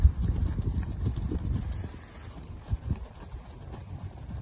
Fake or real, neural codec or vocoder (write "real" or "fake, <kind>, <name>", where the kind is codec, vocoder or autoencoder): real